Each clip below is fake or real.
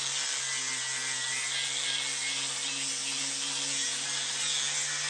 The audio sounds real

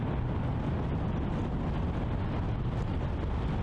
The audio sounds real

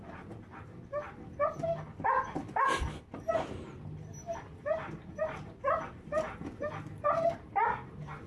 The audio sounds real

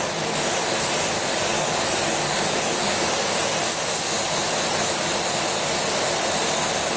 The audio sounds real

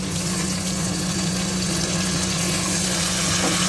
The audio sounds fake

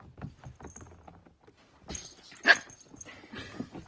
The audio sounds real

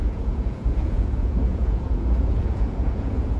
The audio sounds fake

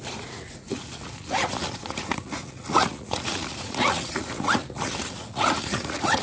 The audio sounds fake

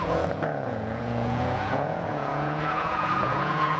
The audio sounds fake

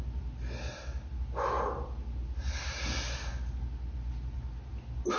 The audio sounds real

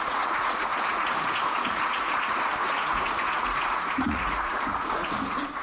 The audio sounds fake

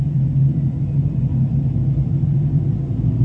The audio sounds real